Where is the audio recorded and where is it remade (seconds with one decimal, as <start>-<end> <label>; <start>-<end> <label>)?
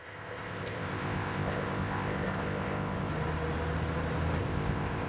0.0-3.1 remade; 3.1-4.4 recorded; 4.4-5.1 remade